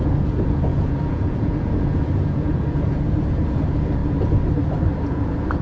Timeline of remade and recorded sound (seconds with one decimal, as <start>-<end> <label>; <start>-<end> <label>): 0.0-4.0 remade; 4.0-5.1 recorded; 5.1-5.6 remade